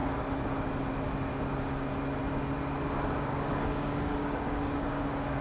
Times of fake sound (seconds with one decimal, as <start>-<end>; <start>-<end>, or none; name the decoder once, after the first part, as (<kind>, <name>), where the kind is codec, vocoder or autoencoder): 3.2-5.4 (codec, DAC)